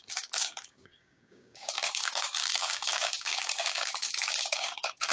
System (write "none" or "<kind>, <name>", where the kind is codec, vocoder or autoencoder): codec, DAC